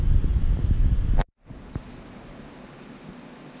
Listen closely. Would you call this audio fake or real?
real